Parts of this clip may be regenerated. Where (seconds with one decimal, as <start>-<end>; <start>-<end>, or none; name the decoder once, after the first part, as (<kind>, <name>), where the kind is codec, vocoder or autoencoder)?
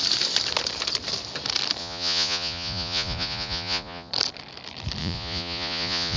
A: 1.8-4.1 (vocoder, Vocos); 5.0-6.2